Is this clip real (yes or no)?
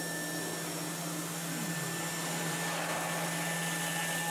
yes